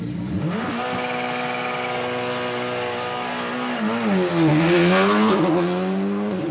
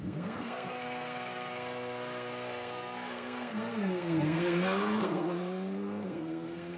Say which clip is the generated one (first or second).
second